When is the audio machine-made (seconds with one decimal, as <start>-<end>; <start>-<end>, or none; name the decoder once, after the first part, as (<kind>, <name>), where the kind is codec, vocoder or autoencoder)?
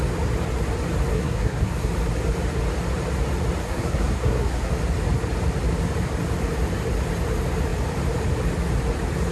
1.1-1.9 (codec, SNAC); 3.6-4.7